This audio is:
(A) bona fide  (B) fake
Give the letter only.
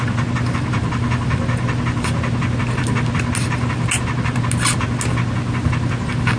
A